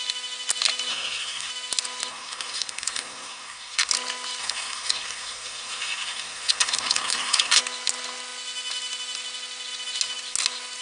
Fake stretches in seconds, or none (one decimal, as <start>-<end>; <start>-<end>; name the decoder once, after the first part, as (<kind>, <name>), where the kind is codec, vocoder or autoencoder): 0.9-1.5 (codec, SNAC); 2.1-3.9; 4.4-7.6